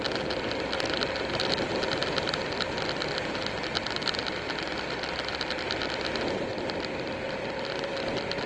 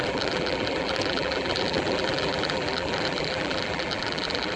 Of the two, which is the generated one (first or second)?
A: second